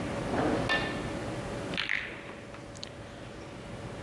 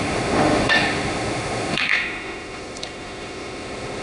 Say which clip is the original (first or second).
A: first